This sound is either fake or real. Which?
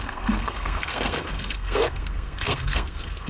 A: fake